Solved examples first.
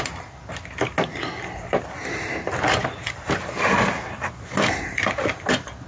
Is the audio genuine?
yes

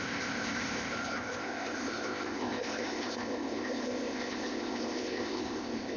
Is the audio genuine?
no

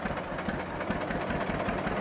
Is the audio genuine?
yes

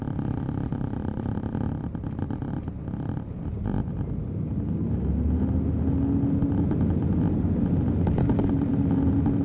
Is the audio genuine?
yes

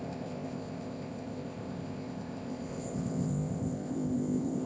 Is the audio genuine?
no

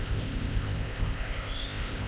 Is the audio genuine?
no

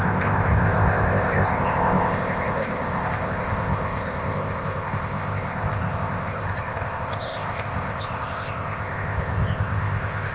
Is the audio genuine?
no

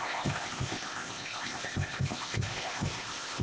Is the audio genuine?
no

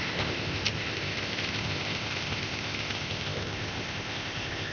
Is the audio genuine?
no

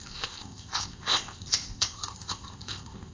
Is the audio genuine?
no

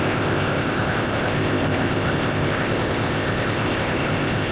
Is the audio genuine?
no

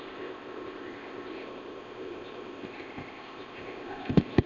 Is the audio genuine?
no